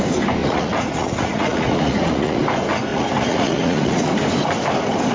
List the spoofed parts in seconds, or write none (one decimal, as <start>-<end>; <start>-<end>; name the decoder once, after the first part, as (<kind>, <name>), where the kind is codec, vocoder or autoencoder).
0.4-2.4 (vocoder, Vocos); 2.9-4.1